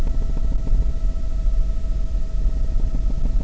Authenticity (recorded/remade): recorded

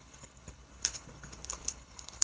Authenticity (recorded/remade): remade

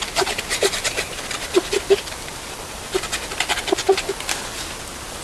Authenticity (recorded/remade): recorded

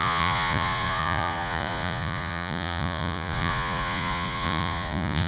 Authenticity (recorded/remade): remade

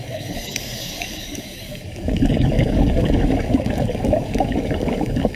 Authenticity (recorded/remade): remade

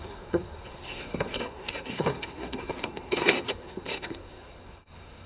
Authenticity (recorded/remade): remade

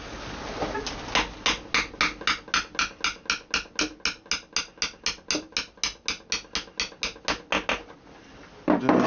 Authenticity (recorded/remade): recorded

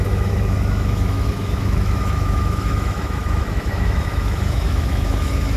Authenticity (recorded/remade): remade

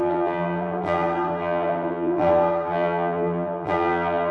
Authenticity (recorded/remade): remade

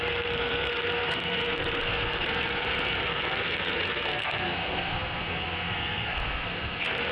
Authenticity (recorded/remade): remade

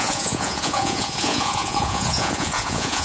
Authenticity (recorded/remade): remade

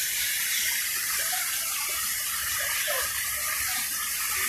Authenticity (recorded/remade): recorded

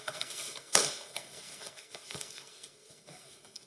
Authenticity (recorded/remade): remade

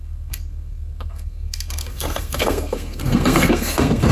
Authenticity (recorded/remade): remade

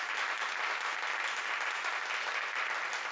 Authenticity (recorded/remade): recorded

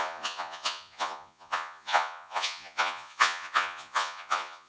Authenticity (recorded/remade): remade